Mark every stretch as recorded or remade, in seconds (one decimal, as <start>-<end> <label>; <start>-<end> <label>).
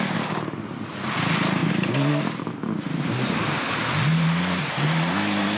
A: 0.0-5.6 recorded